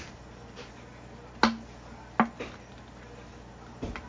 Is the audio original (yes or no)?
yes